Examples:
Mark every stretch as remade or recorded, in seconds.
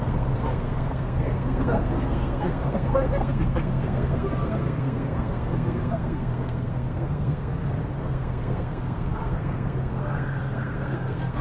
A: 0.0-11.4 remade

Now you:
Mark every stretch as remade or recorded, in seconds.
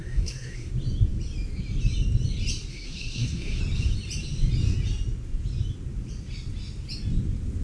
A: 0.0-0.7 remade; 0.7-2.7 recorded; 2.7-3.6 remade; 3.6-7.6 recorded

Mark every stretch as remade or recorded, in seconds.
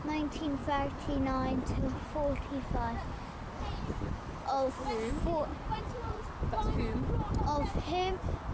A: 0.0-5.5 recorded; 5.5-6.3 remade; 6.3-8.5 recorded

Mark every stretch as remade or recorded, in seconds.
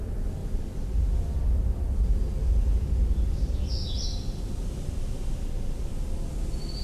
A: 0.0-6.8 recorded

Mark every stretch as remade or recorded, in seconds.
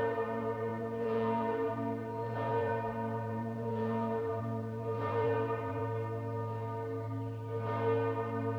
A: 0.0-5.8 remade; 5.8-8.6 recorded